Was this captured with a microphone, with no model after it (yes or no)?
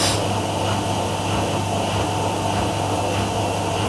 yes